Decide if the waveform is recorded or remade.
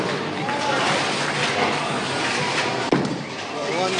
recorded